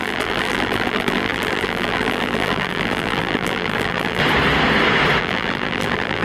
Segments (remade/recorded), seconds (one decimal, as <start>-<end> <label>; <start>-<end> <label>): 0.0-4.2 remade; 4.2-5.2 recorded; 5.2-6.2 remade

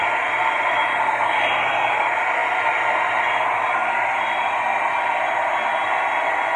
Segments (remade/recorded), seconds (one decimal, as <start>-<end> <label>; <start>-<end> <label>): 0.0-6.6 recorded

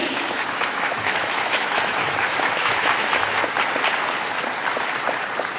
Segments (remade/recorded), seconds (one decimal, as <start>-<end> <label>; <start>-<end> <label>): 0.0-3.4 remade; 3.4-5.6 recorded

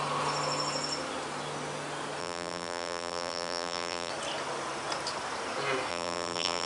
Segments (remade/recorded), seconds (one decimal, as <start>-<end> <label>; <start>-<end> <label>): 0.0-2.2 recorded; 2.2-4.1 remade; 4.1-5.9 recorded; 5.9-6.7 remade

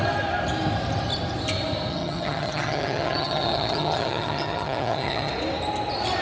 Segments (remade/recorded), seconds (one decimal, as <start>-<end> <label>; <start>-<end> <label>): 0.0-1.9 recorded; 1.9-5.3 remade; 5.3-6.2 recorded